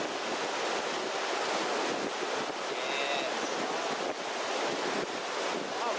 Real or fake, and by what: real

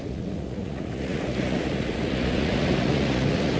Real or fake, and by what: fake, vocoder, Vocos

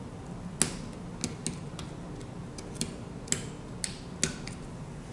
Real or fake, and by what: real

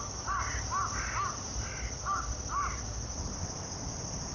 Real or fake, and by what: real